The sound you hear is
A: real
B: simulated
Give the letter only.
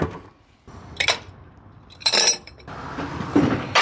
B